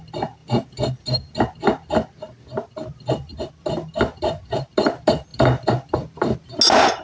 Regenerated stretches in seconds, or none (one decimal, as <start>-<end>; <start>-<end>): none